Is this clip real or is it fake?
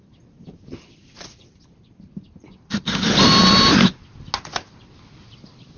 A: real